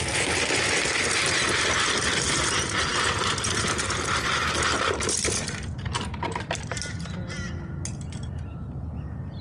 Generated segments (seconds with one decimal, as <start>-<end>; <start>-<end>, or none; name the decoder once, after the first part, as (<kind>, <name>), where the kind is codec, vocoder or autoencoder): none